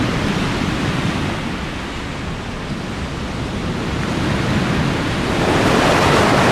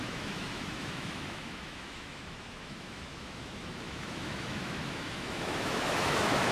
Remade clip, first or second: second